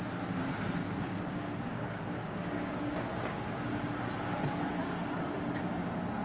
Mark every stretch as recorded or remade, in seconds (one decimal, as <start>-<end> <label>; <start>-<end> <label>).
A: 0.0-0.8 recorded; 0.8-4.0 remade; 4.0-6.2 recorded